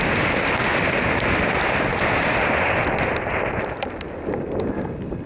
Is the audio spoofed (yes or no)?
no